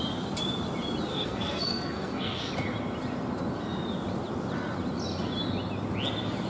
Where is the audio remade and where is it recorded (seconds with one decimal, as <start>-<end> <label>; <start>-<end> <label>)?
0.0-1.1 recorded; 1.1-2.5 remade; 2.5-6.5 recorded